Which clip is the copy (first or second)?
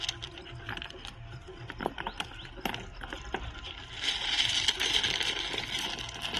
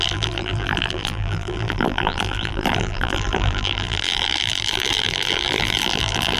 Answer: second